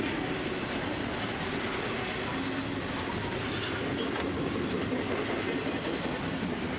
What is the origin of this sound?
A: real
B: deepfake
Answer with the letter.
A